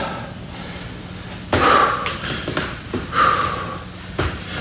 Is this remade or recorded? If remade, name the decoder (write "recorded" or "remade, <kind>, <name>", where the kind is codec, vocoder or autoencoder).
recorded